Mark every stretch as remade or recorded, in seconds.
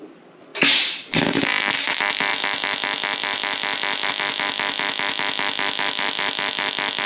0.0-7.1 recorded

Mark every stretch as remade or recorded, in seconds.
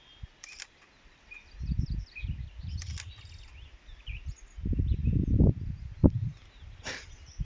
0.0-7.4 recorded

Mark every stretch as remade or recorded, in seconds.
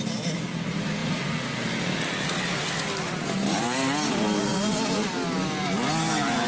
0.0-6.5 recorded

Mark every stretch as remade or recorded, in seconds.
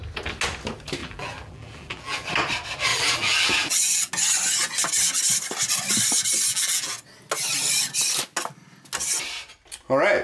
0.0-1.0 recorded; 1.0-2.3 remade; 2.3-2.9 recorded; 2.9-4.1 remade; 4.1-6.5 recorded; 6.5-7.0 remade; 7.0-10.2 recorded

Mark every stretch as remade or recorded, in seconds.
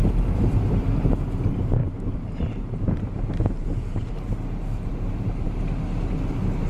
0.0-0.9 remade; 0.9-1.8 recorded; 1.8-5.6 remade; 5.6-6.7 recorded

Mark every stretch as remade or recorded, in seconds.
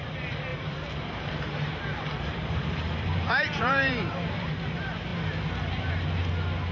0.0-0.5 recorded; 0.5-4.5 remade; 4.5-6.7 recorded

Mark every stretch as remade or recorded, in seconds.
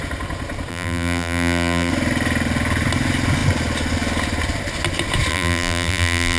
0.0-0.7 recorded; 0.7-1.9 remade; 1.9-5.3 recorded; 5.3-6.4 remade